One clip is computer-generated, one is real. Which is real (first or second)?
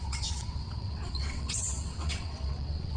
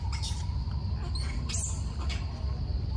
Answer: second